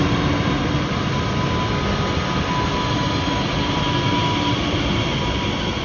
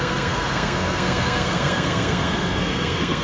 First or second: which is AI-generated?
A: second